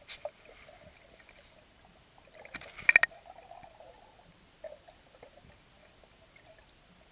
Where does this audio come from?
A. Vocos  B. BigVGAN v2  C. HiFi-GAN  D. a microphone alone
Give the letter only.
D